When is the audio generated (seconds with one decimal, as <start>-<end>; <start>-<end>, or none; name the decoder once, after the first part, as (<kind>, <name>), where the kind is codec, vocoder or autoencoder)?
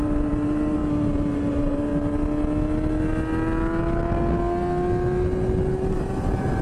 0.0-0.8 (vocoder, BigVGAN v2); 1.5-1.9; 5.9-6.6